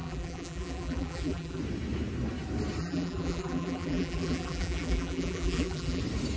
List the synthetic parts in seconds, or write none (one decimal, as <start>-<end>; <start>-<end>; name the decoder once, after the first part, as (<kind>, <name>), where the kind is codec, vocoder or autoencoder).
0.0-1.6 (vocoder, BigVGAN v2); 2.8-6.0